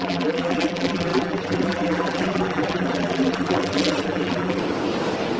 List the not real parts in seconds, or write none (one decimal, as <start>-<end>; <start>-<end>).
0.0-4.6